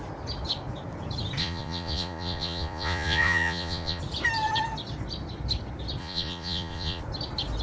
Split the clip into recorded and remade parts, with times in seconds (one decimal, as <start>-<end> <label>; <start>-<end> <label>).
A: 0.0-1.4 recorded; 1.4-4.0 remade; 4.0-6.0 recorded; 6.0-7.0 remade; 7.0-7.6 recorded